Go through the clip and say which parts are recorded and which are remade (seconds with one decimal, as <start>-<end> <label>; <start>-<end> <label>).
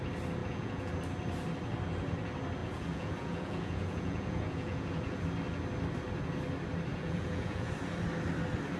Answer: 0.0-0.4 recorded; 0.4-0.9 remade; 0.9-2.6 recorded; 2.6-5.2 remade; 5.2-6.9 recorded; 6.9-7.7 remade; 7.7-8.8 recorded